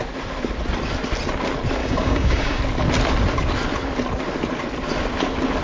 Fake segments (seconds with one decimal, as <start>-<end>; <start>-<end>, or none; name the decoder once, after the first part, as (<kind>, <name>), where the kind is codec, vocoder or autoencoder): 1.8-2.6 (codec, DAC)